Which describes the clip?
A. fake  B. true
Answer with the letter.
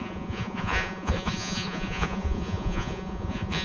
A